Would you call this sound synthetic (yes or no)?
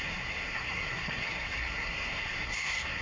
yes